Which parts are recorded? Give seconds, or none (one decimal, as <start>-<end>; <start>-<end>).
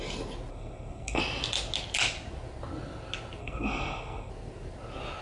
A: 0.0-0.5; 1.2-3.4; 4.3-5.2